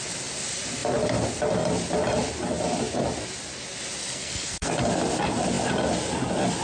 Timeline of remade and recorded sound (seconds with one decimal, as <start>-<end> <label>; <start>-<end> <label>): 0.0-4.0 recorded; 4.0-4.7 remade; 4.7-6.6 recorded